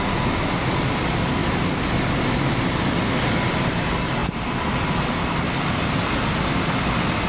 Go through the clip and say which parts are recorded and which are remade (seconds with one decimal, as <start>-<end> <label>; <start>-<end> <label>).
0.0-1.4 recorded; 1.4-2.0 remade; 2.0-4.2 recorded; 4.2-4.8 remade; 4.8-7.3 recorded